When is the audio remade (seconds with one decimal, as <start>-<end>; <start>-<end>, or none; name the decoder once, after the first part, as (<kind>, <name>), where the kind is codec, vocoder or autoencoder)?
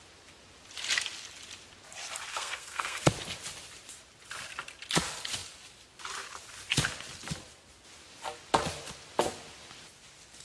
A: 2.3-3.0 (codec, SNAC)